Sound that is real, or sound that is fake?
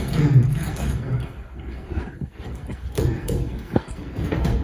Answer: fake